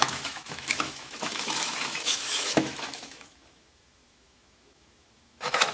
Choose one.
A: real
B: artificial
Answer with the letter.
B